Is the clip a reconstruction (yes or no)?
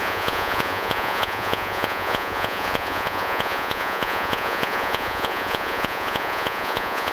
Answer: yes